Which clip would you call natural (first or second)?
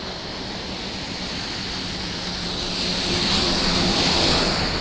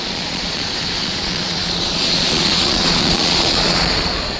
first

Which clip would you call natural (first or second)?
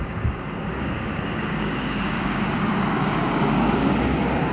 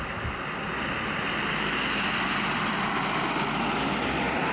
second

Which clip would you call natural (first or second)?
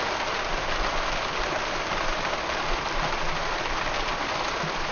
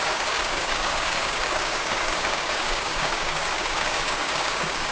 first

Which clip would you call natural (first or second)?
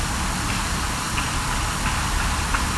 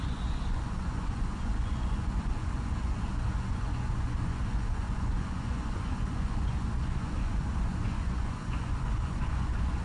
first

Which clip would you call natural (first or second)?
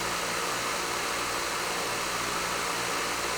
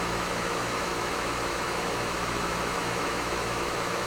first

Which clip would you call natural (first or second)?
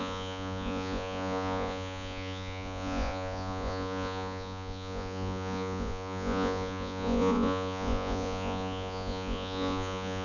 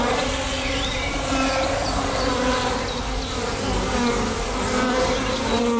second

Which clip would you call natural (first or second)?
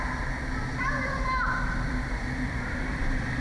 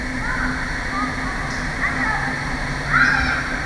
second